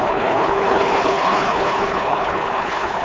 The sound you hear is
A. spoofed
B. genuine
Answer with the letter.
A